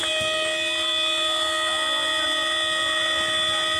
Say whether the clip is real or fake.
real